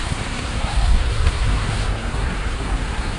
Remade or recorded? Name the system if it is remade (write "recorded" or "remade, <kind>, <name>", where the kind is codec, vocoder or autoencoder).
remade, codec, SNAC